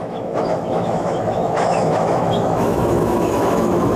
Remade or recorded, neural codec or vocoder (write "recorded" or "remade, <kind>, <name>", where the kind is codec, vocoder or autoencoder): remade, autoencoder, DAC-VAE